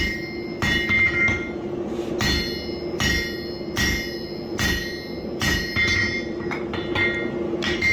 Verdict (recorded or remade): recorded